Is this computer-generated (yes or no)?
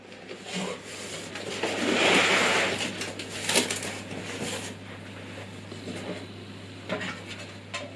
no